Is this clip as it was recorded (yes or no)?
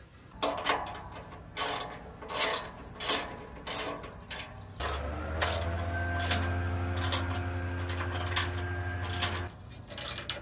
yes